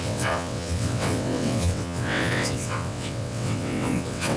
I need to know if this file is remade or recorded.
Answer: remade